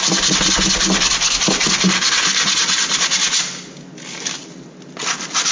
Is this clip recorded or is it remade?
recorded